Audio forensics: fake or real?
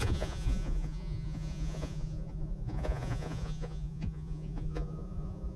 fake